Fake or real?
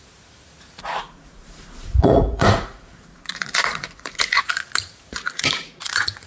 fake